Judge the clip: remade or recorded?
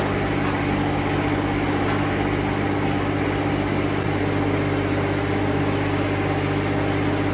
recorded